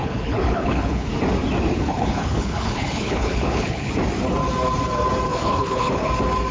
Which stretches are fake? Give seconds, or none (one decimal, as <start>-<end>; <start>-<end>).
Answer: 0.0-1.1; 1.7-3.9; 5.3-6.1